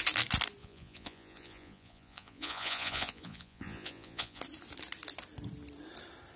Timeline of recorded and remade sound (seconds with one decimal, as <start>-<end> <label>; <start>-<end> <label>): 0.0-0.6 recorded; 0.6-4.4 remade; 4.4-6.4 recorded